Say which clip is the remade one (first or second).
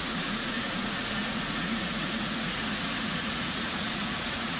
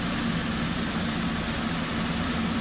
first